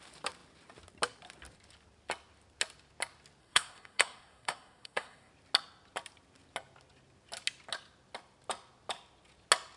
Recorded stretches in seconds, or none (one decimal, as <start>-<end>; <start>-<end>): 0.0-3.4; 5.3-9.8